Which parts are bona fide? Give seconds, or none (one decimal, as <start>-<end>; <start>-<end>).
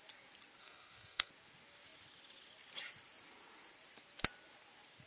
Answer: 0.0-0.6; 1.3-5.1